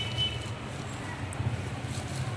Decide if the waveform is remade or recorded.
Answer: recorded